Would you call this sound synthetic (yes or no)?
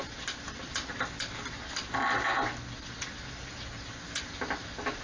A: no